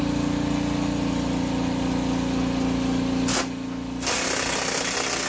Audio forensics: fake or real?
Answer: real